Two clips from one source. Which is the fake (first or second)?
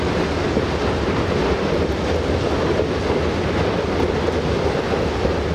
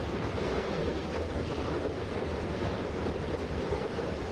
second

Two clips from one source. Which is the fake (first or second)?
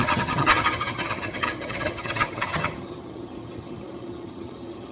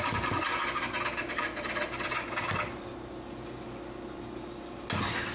first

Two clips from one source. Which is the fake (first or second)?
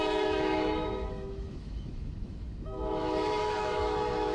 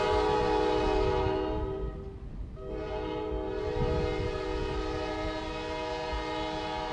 first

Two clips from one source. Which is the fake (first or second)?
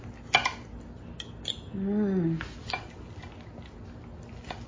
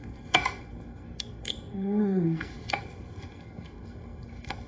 second